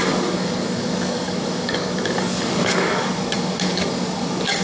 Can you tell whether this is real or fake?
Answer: fake